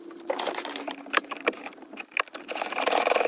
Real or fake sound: fake